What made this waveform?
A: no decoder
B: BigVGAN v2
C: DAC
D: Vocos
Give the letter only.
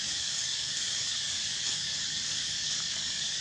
C